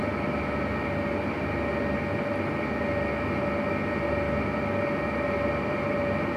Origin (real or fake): real